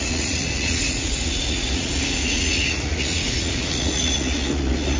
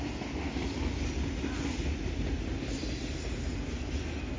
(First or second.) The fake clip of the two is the first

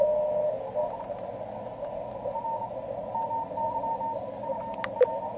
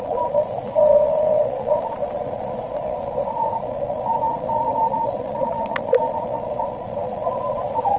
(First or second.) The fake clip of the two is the second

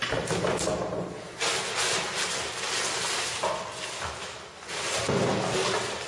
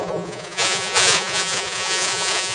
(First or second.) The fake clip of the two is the second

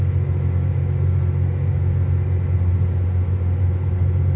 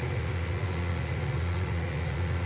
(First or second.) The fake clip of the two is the second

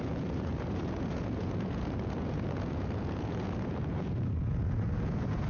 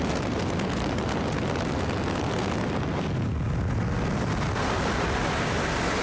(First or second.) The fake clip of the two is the first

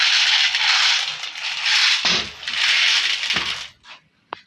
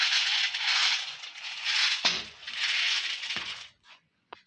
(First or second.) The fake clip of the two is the second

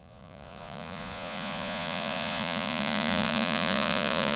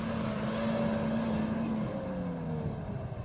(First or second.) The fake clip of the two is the first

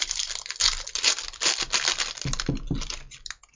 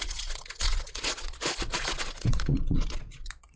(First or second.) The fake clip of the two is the second